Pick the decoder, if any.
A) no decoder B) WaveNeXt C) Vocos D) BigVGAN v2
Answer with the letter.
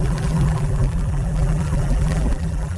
D